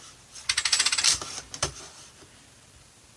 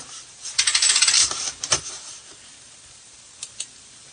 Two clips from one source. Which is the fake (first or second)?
second